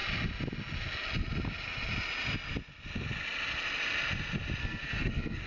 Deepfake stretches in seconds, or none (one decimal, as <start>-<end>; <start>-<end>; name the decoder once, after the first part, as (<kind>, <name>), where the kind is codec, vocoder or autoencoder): 4.6-5.5 (codec, SNAC)